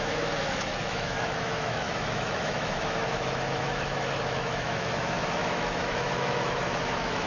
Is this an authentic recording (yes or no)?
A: no